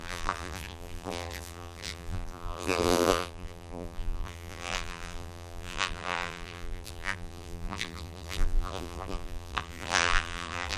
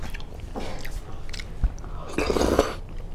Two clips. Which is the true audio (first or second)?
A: second